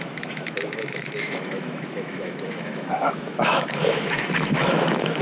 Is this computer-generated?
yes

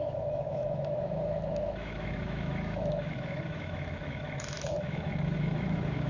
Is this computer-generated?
yes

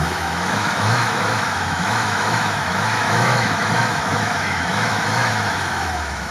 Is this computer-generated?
yes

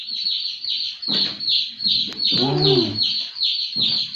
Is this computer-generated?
no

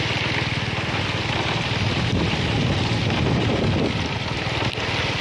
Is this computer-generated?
no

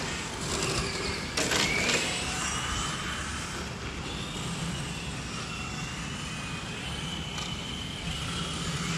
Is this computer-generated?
no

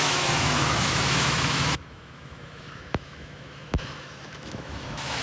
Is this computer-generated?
yes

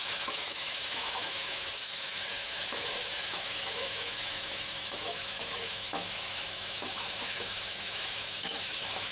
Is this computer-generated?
yes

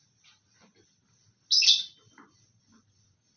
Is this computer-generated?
no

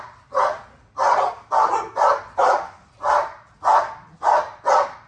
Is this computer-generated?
no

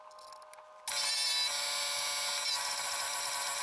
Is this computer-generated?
no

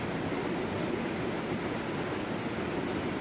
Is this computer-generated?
no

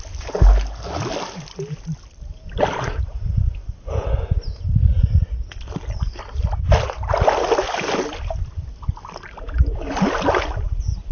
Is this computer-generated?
no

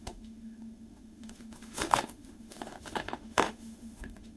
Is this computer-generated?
yes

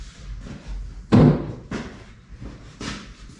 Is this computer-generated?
no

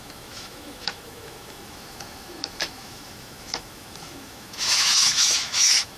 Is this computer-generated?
yes